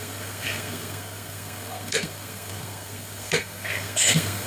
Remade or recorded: remade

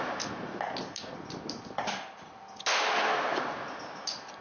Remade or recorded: recorded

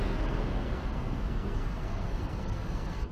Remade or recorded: remade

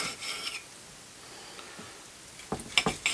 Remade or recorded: recorded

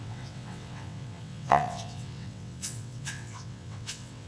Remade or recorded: remade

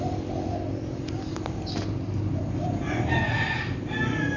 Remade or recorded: recorded